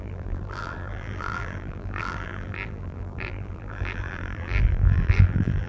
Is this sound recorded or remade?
remade